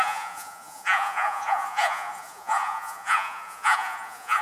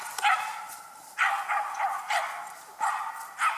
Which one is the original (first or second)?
second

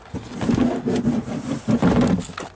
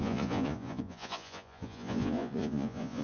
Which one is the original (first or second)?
first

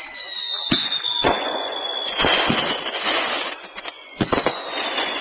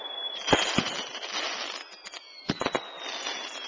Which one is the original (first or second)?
second